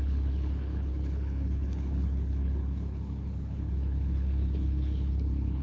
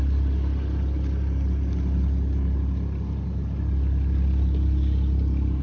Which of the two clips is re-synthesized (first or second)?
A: first